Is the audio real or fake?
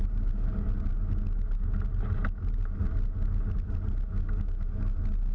real